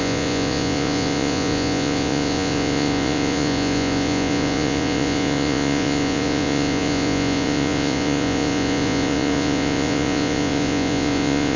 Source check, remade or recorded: remade